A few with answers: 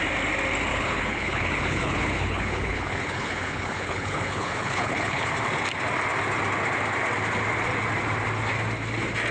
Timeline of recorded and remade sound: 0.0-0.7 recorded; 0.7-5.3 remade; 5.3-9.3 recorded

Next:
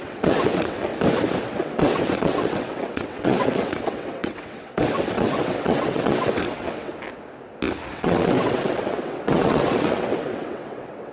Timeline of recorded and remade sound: 0.0-0.9 remade; 0.9-1.4 recorded; 1.4-6.9 remade; 6.9-7.9 recorded; 7.9-11.1 remade

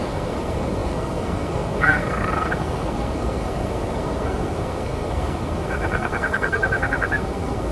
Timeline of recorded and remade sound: 0.0-7.7 remade